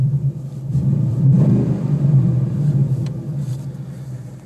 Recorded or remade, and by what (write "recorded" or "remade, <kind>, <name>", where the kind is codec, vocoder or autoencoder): remade, vocoder, BigVGAN v2